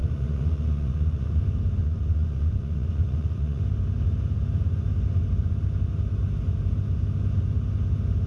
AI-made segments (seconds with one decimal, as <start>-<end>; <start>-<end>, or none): 0.0-1.4; 1.8-3.6